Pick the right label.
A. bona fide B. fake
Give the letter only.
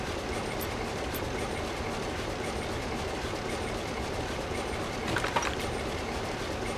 A